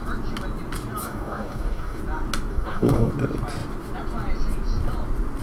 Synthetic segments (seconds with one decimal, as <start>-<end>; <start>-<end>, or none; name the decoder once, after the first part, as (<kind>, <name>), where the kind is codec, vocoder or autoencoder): 1.0-2.0 (codec, DAC); 2.5-3.1